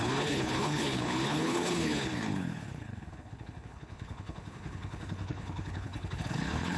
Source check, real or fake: fake